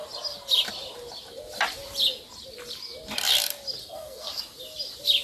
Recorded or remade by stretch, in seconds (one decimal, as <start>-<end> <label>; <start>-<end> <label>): 0.0-3.8 recorded; 3.8-4.4 remade; 4.4-5.2 recorded